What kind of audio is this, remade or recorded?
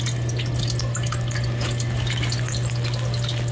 recorded